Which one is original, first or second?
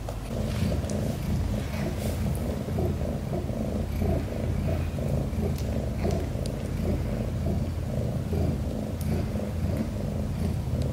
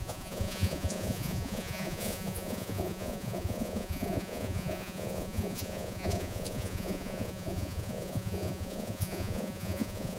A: first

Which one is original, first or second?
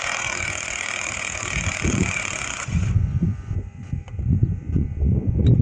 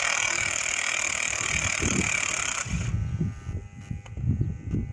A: second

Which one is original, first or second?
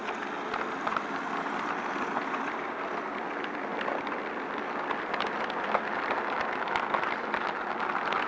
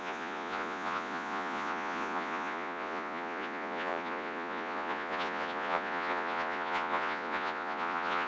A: first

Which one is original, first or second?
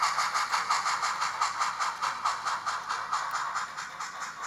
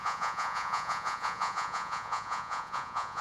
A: first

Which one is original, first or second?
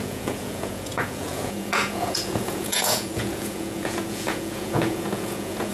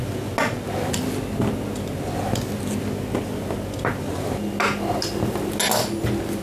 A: second